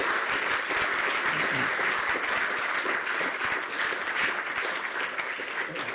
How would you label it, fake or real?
real